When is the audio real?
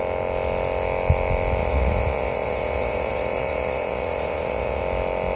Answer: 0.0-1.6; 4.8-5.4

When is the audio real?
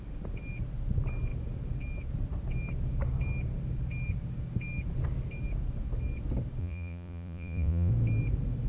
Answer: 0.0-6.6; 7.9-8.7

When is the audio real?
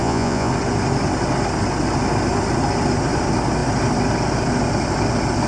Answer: 0.5-5.5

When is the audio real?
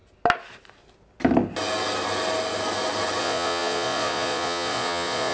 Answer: 0.0-3.2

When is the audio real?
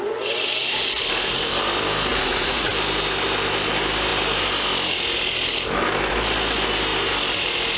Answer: 0.0-2.1; 2.7-7.8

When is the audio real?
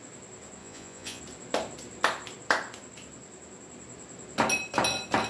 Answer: 0.0-0.6; 1.2-5.3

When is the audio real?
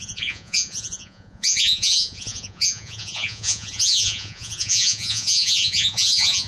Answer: none